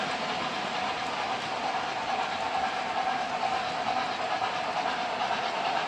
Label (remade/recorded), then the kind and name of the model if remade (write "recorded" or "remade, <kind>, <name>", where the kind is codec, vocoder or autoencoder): recorded